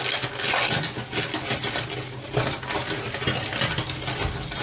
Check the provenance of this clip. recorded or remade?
recorded